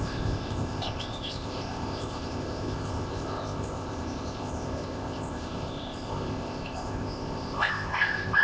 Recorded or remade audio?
remade